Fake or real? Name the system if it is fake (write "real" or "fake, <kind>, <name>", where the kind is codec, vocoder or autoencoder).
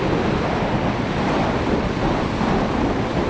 real